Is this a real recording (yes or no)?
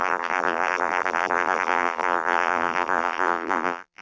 no